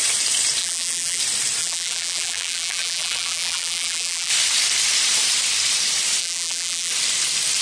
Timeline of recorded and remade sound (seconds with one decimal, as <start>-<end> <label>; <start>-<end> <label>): 0.0-0.6 recorded; 0.6-1.2 remade; 1.2-1.6 recorded; 1.6-4.3 remade; 4.3-6.2 recorded; 6.2-6.9 remade; 6.9-7.6 recorded